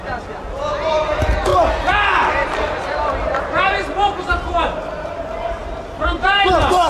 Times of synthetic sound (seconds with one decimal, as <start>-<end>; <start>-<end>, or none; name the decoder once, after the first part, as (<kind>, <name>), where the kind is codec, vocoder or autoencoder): 5.6-6.5 (vocoder, BigVGAN v2)